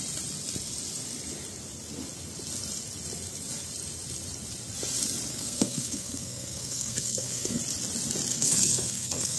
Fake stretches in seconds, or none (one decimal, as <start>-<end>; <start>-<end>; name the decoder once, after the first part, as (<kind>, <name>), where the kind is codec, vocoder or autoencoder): 5.3-7.6 (codec, SNAC); 8.3-9.4